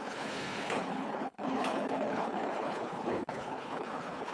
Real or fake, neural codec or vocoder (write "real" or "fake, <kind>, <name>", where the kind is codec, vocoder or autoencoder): fake, codec, HILCodec